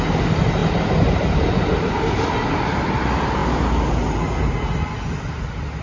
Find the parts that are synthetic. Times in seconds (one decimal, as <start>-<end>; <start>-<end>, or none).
none

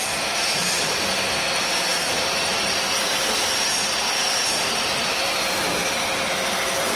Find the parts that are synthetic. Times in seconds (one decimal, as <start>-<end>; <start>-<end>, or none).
0.6-1.1; 1.9-3.0

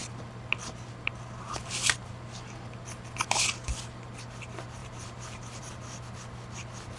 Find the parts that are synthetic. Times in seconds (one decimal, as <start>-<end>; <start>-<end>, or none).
4.8-5.6

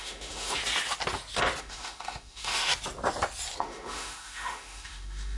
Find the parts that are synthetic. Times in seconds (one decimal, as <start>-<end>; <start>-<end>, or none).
0.0-0.6; 1.6-2.7; 3.6-5.4

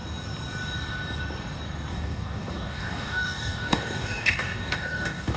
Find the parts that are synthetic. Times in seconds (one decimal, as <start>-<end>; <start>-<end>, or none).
1.9-5.4